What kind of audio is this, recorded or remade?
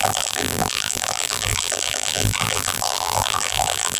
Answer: remade